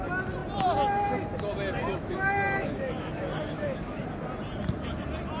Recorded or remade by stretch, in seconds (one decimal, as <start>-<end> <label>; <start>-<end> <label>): 0.0-1.9 recorded; 1.9-4.0 remade; 4.0-5.4 recorded